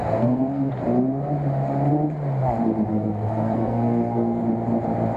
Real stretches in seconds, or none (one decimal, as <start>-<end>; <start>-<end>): 0.7-2.9; 4.4-5.2